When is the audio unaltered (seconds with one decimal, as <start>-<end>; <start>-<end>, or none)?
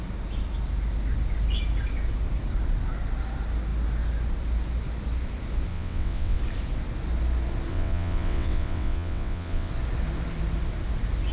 0.0-5.7; 6.4-7.7; 9.7-11.3